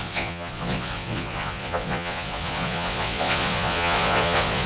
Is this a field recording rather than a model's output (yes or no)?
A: no